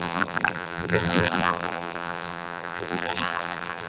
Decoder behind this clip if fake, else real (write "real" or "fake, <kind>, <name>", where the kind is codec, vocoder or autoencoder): fake, vocoder, BigVGAN v2